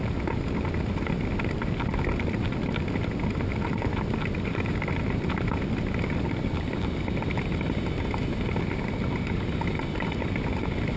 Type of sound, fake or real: real